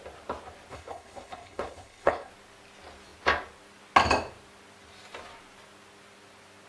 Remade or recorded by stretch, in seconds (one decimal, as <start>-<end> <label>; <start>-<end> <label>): 0.0-0.7 recorded; 0.7-2.3 remade; 2.3-6.7 recorded